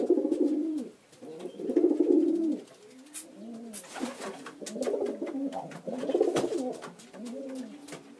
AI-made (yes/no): no